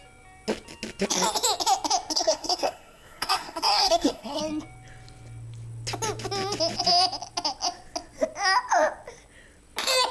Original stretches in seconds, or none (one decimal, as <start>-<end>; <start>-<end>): 0.0-2.1; 4.4-10.1